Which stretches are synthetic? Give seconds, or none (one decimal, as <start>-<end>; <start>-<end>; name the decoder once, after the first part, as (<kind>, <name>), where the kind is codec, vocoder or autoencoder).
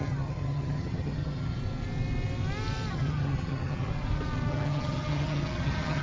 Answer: 0.0-1.6 (vocoder, HiFi-GAN); 2.9-3.9; 4.5-6.0